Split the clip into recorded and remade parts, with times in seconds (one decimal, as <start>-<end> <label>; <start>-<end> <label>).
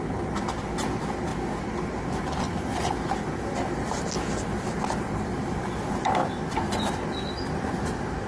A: 0.0-8.3 recorded